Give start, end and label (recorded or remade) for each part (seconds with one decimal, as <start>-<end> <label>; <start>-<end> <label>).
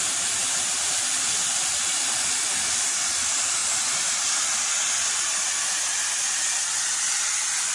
0.0-3.6 remade; 3.6-7.7 recorded